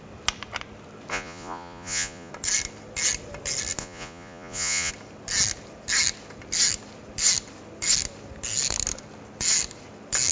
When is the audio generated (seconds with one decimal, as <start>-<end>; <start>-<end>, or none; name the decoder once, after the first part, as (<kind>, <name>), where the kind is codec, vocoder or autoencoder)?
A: 1.1-2.3 (vocoder, Vocos); 3.8-4.9